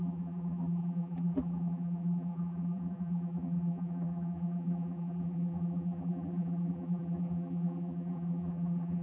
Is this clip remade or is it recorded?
remade